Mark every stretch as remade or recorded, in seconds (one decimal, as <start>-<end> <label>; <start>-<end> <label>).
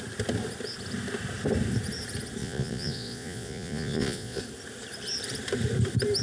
0.0-2.4 recorded; 2.4-4.4 remade; 4.4-6.2 recorded